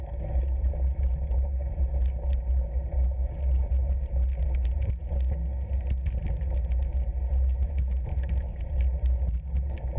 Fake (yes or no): no